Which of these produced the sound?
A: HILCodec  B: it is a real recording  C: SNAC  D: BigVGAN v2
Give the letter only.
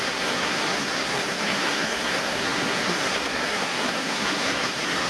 C